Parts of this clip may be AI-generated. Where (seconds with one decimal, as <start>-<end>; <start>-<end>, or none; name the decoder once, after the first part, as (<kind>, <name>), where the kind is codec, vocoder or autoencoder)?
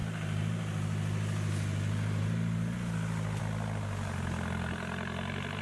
none